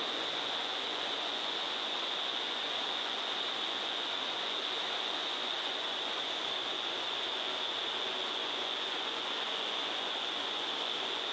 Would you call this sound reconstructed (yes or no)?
yes